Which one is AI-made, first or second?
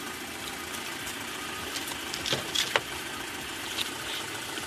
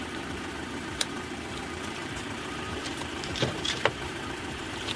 second